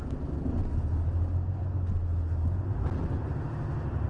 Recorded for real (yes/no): yes